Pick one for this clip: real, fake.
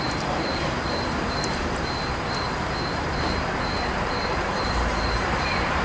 fake